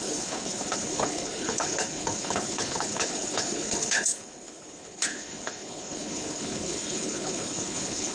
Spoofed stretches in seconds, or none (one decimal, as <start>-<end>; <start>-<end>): 0.0-8.1